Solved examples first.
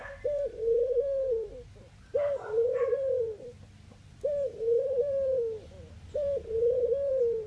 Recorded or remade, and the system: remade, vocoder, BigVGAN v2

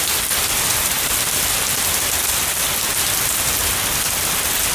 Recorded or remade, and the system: recorded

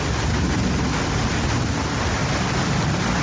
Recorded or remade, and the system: recorded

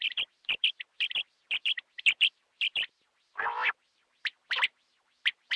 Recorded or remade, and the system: remade, vocoder, BigVGAN v2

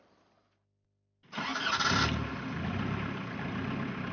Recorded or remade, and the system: recorded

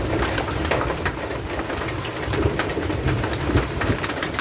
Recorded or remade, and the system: recorded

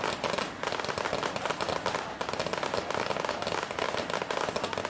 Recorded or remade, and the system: recorded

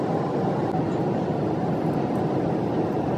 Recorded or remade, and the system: recorded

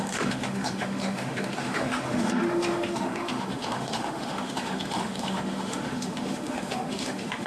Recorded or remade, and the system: remade, autoencoder, DAC-VAE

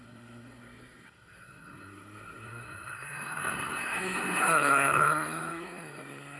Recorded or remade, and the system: remade, codec, SNAC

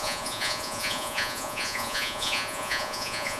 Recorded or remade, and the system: remade, vocoder, Vocos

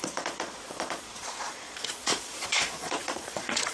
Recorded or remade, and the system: remade, vocoder, Vocos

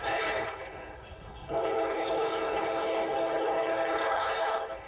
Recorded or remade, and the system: remade, codec, HILCodec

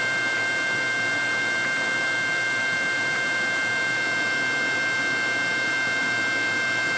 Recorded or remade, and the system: recorded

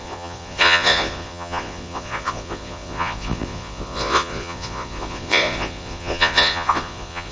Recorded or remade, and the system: remade, vocoder, Vocos